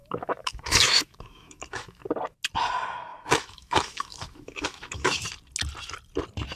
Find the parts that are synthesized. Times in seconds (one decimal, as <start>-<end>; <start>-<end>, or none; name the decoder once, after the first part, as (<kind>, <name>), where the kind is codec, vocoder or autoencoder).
0.0-2.1 (autoencoder, DAC-VAE); 3.1-5.2